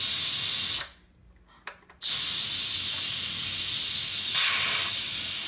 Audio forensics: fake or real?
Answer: real